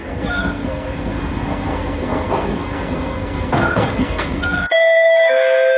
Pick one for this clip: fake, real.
fake